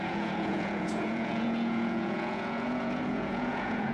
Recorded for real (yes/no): no